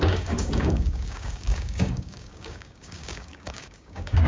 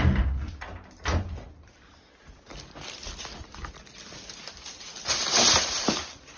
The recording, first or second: second